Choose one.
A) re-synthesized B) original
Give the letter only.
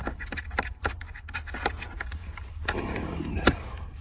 B